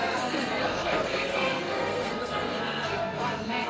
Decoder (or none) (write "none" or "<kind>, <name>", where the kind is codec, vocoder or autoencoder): codec, SNAC